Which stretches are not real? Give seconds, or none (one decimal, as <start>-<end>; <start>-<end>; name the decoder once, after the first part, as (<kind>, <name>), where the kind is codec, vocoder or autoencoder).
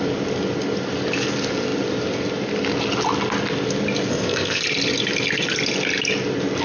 4.1-4.6 (codec, ZipCodec)